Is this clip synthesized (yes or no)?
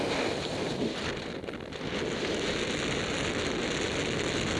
no